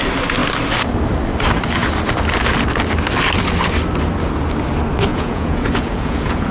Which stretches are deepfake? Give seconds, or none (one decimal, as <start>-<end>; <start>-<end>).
5.1-6.5